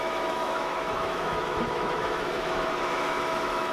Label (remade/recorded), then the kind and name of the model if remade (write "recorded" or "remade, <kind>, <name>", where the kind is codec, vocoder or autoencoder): remade, autoencoder, DAC-VAE